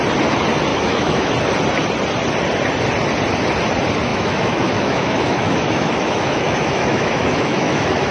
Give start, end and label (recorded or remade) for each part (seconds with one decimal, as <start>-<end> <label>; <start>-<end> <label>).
0.0-0.7 recorded; 0.7-1.3 remade; 1.3-4.1 recorded; 4.1-8.1 remade